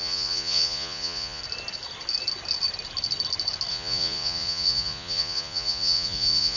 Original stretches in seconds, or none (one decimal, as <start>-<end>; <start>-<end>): 1.4-3.7